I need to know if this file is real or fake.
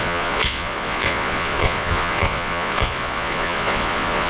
fake